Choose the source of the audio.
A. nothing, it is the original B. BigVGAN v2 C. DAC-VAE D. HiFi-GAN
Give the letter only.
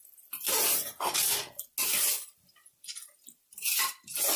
A